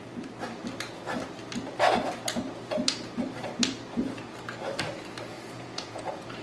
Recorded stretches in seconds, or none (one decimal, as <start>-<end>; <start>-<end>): 0.0-5.3